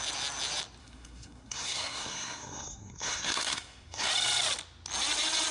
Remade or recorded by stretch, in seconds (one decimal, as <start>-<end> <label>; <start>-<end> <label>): 0.0-0.8 recorded; 0.8-4.1 remade; 4.1-5.5 recorded

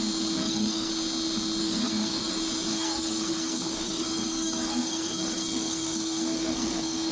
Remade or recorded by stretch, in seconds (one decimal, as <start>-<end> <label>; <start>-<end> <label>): 0.0-0.4 recorded; 0.4-0.9 remade; 0.9-1.6 recorded; 1.6-2.3 remade; 2.3-2.7 recorded; 2.7-7.1 remade

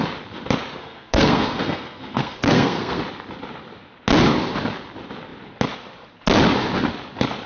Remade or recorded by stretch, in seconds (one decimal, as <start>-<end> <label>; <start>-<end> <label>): 0.0-0.8 recorded; 0.8-3.0 remade; 3.0-7.5 recorded